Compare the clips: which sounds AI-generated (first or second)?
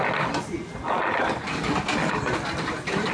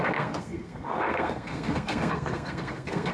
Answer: second